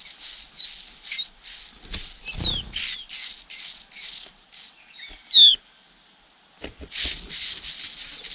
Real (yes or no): yes